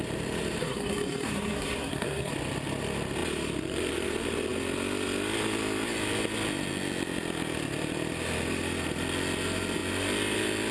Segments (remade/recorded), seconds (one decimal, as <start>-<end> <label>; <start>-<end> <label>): 0.0-0.6 recorded; 0.6-2.3 remade; 2.3-10.7 recorded